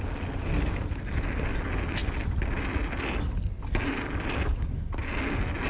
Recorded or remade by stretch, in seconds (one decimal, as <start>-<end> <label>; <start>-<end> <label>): 0.0-5.7 recorded